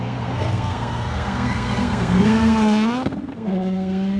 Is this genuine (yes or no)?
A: no